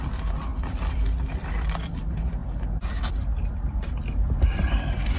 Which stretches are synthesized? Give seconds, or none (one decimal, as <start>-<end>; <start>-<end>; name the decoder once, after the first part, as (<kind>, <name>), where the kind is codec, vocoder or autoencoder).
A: 0.0-2.4 (vocoder, BigVGAN v2); 3.1-5.2